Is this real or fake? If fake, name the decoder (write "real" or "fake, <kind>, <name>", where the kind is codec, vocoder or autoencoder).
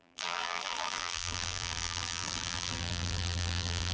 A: fake, vocoder, BigVGAN v2